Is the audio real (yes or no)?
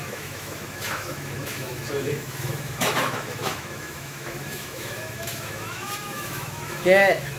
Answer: no